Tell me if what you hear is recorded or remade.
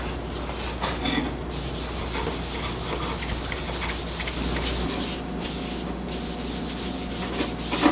recorded